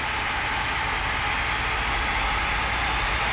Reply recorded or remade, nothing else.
recorded